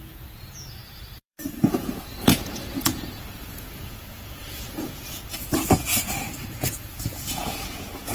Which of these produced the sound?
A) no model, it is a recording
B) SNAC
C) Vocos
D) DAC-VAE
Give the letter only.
C